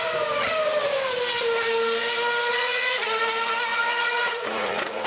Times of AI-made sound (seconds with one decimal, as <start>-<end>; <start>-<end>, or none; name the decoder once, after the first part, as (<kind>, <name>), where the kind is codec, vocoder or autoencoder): 2.5-3.2 (vocoder, Vocos); 3.7-5.1